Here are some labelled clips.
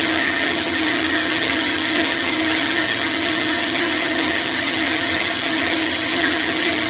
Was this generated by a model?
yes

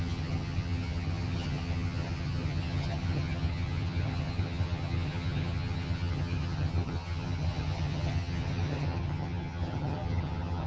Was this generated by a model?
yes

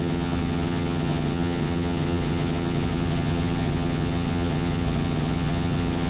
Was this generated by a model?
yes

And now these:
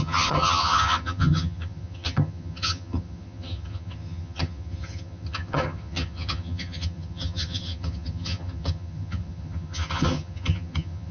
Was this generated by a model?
yes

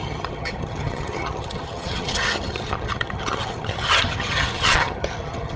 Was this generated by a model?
yes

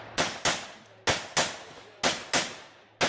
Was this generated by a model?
no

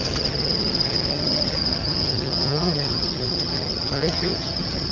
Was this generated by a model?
yes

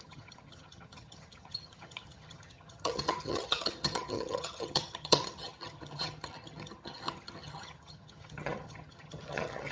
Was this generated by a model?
yes